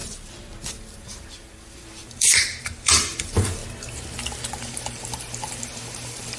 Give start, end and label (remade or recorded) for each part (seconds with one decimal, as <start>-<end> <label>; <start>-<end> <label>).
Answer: 0.0-0.9 recorded; 0.9-3.6 remade; 3.6-4.6 recorded; 4.6-6.4 remade